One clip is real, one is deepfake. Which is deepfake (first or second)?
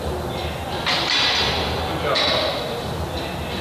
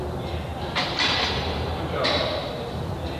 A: second